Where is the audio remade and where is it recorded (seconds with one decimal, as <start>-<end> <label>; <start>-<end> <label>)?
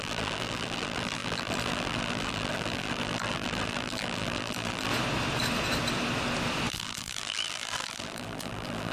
0.0-4.9 remade; 4.9-6.7 recorded; 6.7-8.9 remade